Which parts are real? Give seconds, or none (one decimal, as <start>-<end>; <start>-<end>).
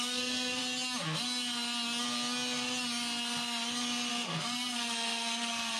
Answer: 0.6-4.1